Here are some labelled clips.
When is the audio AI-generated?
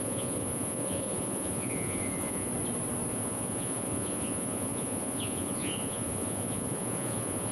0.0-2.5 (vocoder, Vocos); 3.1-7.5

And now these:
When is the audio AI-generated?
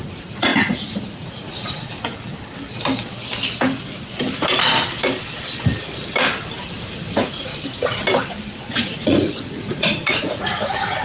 0.0-2.1 (vocoder, Vocos); 6.6-7.5; 8.7-11.0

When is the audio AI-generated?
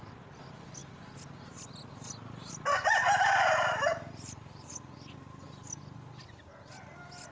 none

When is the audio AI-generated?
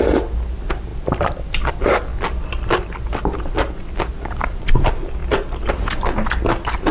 none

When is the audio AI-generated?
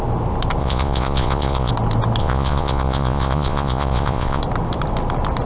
0.6-1.7 (vocoder, Vocos); 2.2-4.4